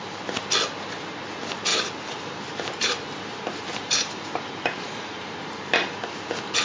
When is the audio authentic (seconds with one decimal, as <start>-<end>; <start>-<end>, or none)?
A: 0.0-1.7; 5.7-6.6